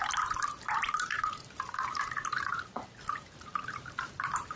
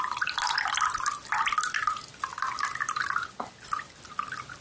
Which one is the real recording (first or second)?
second